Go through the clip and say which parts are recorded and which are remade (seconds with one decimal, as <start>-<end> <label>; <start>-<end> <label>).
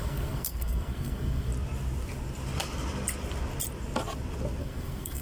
0.0-1.5 remade; 1.5-4.6 recorded; 4.6-5.2 remade